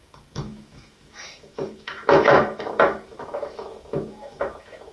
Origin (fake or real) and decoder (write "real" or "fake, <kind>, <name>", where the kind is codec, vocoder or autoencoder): fake, autoencoder, DAC-VAE